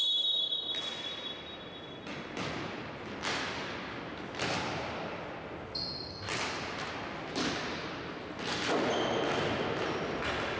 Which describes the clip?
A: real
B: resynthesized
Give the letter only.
A